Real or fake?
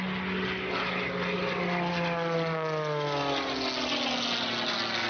real